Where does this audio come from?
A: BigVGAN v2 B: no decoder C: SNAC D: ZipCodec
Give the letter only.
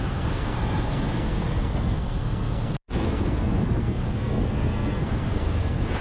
C